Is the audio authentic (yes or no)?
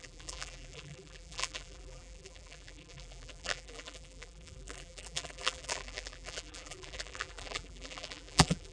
no